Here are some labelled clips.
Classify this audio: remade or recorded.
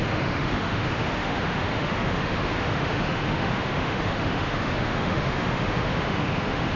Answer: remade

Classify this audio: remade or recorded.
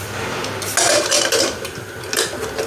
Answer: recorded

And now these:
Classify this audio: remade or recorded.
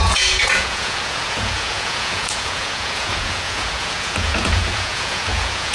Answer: remade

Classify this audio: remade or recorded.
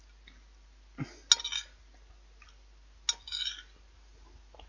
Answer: recorded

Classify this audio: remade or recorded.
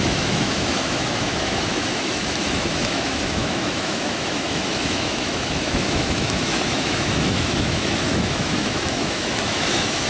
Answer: remade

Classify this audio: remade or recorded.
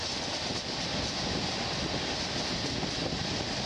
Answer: recorded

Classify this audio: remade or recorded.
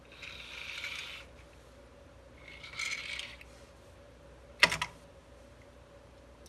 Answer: recorded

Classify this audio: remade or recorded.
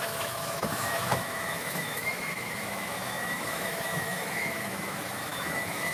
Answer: remade